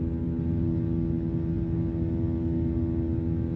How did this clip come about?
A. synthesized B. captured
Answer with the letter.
B